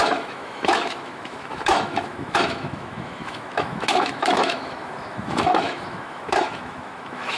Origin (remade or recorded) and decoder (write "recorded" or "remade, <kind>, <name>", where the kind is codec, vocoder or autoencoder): remade, autoencoder, DAC-VAE